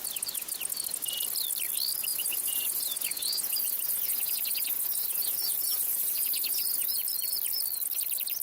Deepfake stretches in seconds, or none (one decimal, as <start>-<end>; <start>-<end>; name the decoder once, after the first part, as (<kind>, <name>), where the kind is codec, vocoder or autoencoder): 2.1-7.0 (vocoder, Vocos)